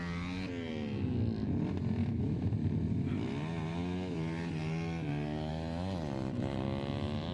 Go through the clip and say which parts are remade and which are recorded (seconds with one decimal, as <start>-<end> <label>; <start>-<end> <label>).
0.0-2.0 recorded; 2.0-2.5 remade; 2.5-7.3 recorded